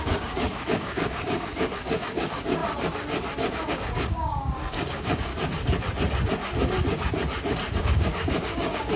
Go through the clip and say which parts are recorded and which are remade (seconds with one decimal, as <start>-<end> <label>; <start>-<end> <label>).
0.0-2.6 remade; 2.6-3.7 recorded; 3.7-5.3 remade; 5.3-7.8 recorded; 7.8-9.0 remade